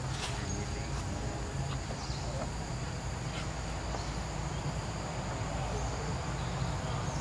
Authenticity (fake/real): real